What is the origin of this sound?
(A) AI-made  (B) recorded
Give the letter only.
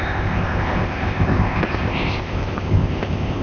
A